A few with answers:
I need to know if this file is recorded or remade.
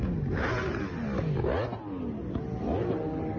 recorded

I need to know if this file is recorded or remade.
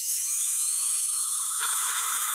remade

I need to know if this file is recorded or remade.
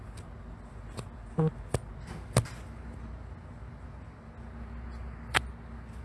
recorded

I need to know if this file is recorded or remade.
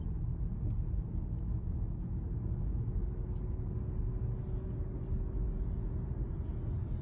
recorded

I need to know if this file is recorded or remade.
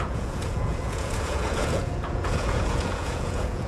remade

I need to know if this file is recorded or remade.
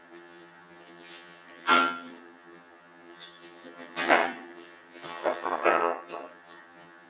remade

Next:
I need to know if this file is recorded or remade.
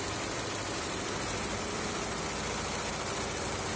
recorded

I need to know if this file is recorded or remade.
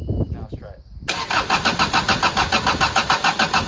recorded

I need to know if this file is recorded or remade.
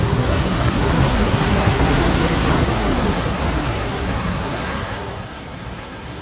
remade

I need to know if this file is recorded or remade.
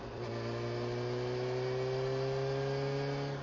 recorded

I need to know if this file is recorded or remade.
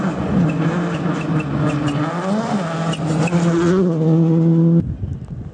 recorded